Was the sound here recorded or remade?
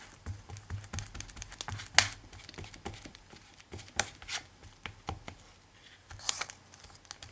recorded